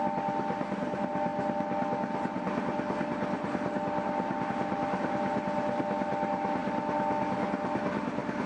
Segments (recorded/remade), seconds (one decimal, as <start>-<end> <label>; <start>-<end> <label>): 0.0-8.5 recorded